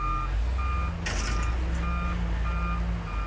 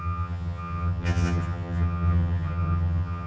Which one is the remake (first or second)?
second